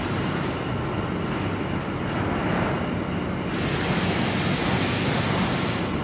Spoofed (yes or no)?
no